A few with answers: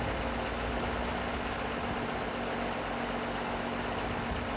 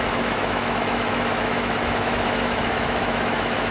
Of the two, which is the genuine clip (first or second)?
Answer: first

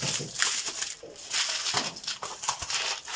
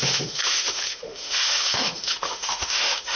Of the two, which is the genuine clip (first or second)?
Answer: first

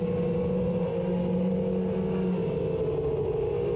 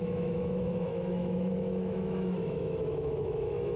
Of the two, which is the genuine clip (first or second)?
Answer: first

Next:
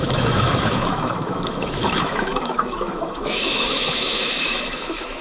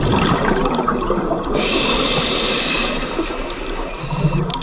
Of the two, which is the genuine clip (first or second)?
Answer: second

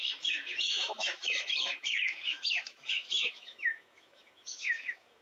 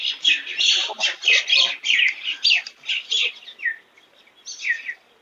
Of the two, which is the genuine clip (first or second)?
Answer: second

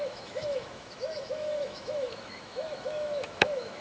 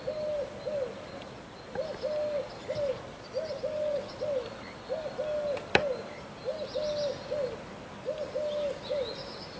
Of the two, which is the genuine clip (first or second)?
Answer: second